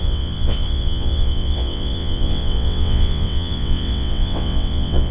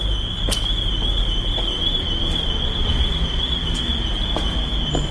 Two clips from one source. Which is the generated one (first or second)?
first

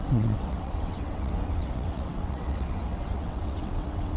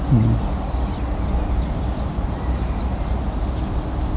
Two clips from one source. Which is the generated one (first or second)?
first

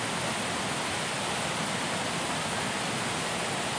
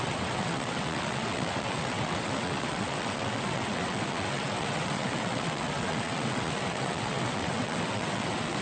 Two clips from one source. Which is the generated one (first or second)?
second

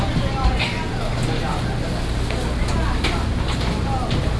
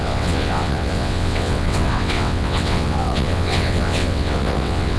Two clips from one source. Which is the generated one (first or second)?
second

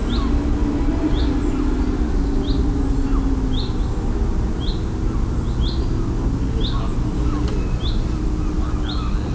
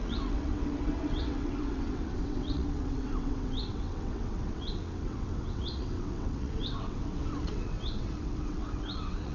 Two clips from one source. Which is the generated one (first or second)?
second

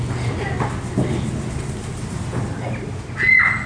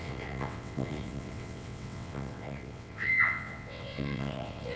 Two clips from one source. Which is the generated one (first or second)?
second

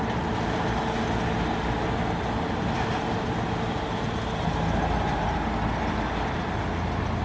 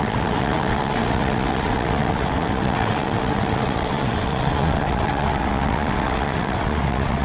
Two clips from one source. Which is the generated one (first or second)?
second